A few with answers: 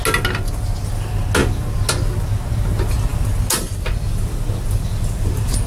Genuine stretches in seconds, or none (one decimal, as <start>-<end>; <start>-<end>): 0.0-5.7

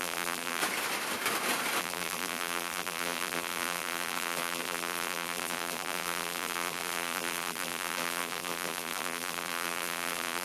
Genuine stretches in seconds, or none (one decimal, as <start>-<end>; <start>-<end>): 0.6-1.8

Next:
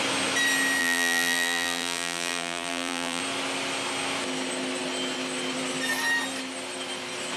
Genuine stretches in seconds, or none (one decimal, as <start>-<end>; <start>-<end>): 0.0-0.8; 3.2-7.4

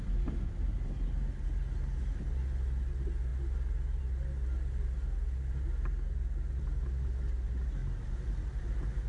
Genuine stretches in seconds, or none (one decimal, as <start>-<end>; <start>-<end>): 0.0-9.1

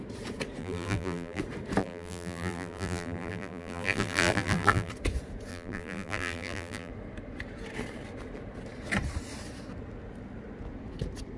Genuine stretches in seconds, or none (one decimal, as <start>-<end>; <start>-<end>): 0.0-0.6; 1.4-1.8; 4.9-5.5; 6.9-11.4